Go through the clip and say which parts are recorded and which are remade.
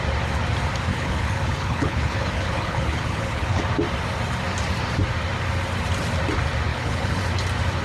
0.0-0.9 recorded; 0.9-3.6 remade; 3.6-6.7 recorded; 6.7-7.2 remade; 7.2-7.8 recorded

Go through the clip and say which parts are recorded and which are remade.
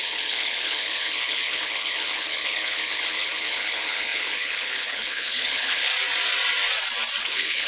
0.0-5.9 remade; 5.9-7.2 recorded; 7.2-7.7 remade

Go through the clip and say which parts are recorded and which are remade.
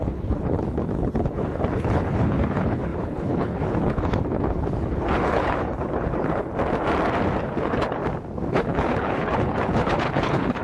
0.0-6.5 remade; 6.5-7.4 recorded; 7.4-8.0 remade; 8.0-8.5 recorded; 8.5-10.6 remade